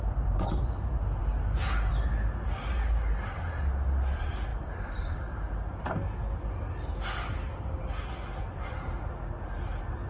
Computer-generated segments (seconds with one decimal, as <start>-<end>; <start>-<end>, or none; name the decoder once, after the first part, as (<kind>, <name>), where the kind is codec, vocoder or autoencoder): none